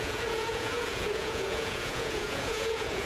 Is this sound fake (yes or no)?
yes